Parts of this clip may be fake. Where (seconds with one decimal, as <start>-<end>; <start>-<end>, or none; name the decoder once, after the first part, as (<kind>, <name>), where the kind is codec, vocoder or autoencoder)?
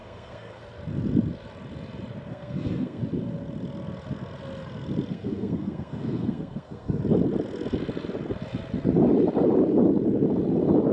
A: 0.0-0.6 (codec, SNAC); 2.3-3.0; 5.1-7.0